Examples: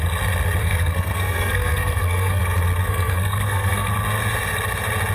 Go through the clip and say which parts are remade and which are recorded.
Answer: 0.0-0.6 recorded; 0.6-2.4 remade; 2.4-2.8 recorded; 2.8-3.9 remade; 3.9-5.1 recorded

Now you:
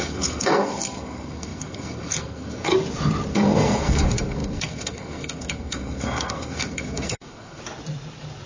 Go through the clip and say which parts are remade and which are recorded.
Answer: 0.0-2.7 remade; 2.7-3.3 recorded; 3.3-7.6 remade; 7.6-8.5 recorded

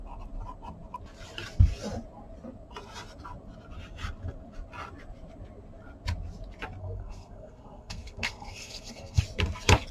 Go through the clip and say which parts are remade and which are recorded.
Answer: 0.0-6.8 recorded; 6.8-9.2 remade; 9.2-9.9 recorded